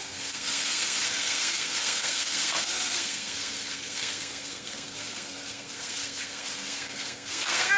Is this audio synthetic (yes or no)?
yes